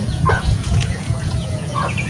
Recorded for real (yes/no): no